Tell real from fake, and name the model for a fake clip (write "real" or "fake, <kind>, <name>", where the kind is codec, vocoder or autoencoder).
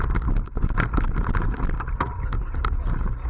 real